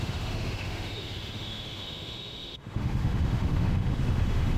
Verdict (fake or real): fake